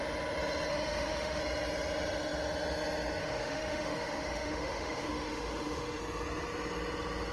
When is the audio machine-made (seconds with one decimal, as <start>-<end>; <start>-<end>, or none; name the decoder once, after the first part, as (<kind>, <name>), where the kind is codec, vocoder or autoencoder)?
0.7-1.4 (autoencoder, DAC-VAE); 3.2-6.0